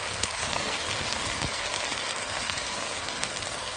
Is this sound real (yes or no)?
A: no